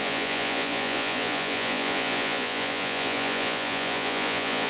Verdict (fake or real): fake